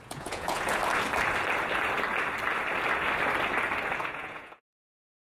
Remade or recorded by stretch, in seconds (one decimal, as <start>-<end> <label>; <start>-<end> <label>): 0.0-0.8 remade; 0.8-4.0 recorded; 4.0-5.4 remade